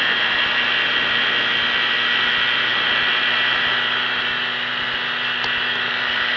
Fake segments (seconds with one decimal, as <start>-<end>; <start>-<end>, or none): none